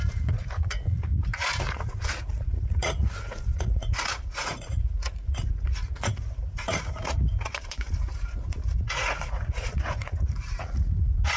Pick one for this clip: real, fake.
fake